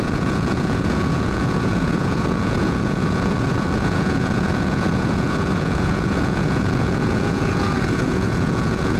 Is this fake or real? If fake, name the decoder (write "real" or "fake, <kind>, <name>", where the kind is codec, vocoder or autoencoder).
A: fake, vocoder, Vocos